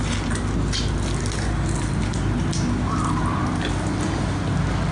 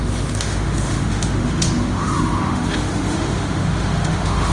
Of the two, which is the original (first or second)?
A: first